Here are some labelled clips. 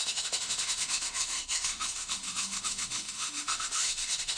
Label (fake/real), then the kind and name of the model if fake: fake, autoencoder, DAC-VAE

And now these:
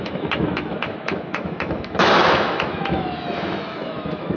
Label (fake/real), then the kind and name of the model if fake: fake, autoencoder, DAC-VAE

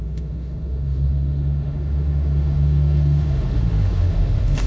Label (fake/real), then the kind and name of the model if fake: fake, autoencoder, DAC-VAE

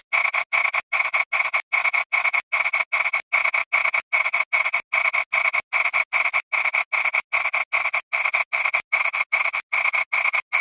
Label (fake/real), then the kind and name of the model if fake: real